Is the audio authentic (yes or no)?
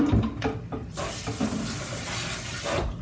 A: yes